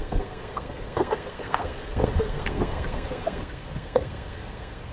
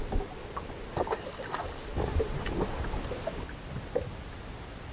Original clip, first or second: second